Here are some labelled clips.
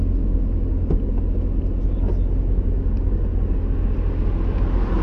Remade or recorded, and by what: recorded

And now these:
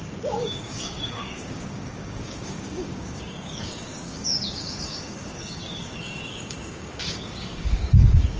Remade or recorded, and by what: remade, codec, DAC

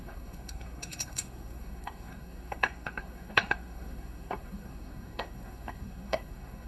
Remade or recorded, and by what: remade, codec, SNAC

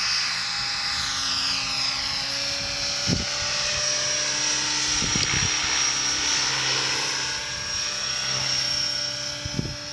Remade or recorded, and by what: recorded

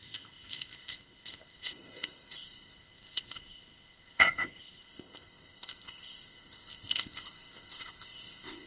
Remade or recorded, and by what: remade, codec, ZipCodec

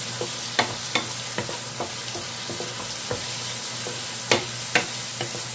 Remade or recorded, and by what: recorded